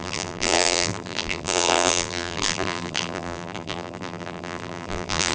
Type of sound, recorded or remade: remade